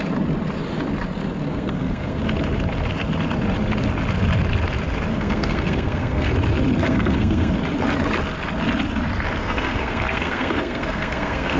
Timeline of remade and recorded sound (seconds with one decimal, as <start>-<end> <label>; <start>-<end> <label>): 0.0-1.5 recorded; 1.5-2.2 remade; 2.2-5.1 recorded; 5.1-6.3 remade; 6.3-6.8 recorded; 6.8-7.5 remade; 7.5-9.4 recorded; 9.4-11.6 remade